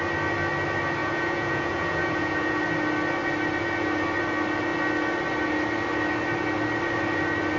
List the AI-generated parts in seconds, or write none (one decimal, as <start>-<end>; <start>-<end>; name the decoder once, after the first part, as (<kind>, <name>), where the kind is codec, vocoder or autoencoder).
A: 1.0-2.6 (vocoder, Vocos)

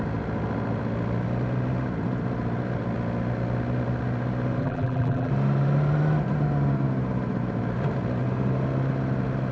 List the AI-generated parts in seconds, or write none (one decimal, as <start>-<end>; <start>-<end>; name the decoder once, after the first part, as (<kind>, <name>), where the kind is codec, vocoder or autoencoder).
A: 4.6-5.3 (vocoder, BigVGAN v2)

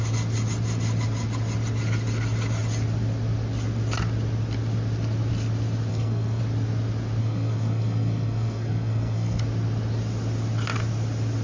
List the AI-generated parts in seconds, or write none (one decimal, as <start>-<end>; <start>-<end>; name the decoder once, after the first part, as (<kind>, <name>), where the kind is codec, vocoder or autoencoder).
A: 5.9-6.4 (codec, SNAC); 7.2-9.4